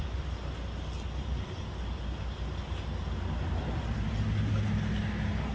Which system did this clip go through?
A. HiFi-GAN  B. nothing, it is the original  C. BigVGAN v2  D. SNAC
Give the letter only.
B